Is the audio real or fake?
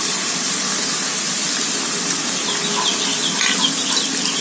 real